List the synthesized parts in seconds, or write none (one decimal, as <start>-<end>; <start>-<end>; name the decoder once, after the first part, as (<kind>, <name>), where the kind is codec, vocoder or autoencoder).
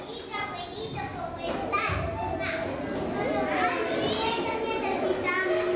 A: none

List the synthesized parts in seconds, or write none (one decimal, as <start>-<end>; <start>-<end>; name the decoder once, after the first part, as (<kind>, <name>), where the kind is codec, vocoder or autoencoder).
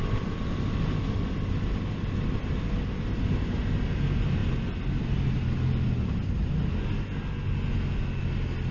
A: none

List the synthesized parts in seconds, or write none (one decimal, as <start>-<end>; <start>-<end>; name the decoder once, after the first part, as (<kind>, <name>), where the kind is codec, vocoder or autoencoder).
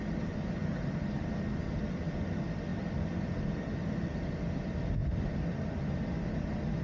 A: 2.7-3.5 (vocoder, BigVGAN v2)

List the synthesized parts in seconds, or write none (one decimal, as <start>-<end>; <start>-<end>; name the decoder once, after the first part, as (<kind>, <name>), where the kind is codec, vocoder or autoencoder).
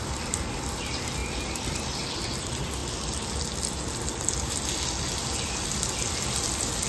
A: 0.0-1.2 (vocoder, BigVGAN v2); 2.1-2.8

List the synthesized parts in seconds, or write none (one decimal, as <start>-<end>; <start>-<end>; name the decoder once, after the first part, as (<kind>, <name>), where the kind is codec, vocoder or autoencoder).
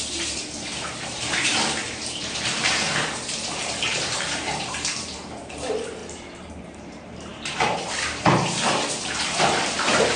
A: 0.0-6.0 (vocoder, BigVGAN v2); 6.6-10.2